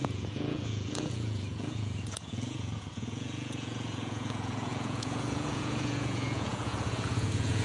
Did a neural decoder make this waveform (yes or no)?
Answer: yes